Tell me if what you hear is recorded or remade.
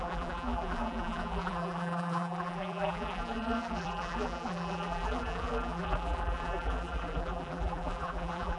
remade